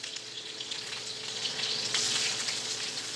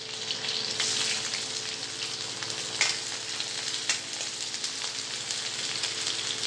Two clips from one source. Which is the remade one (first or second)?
first